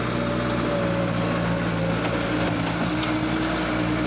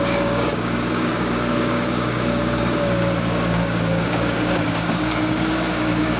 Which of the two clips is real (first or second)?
first